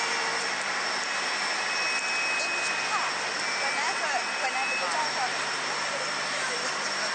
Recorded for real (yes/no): yes